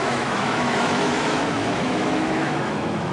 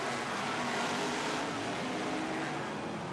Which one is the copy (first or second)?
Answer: first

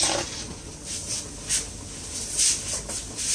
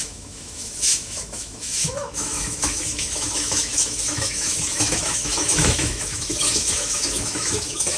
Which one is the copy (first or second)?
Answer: second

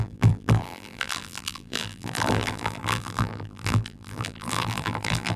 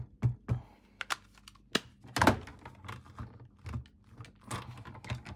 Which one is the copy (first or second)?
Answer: first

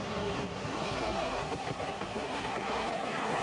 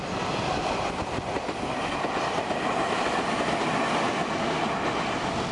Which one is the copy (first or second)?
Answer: first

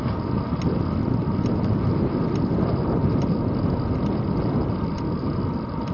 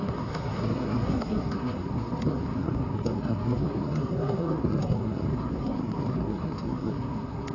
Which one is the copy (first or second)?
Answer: second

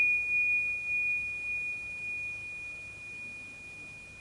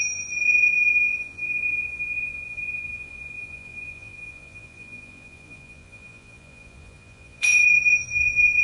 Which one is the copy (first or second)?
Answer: second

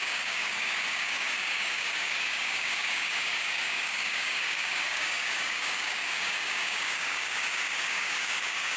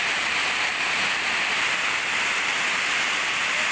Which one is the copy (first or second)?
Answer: first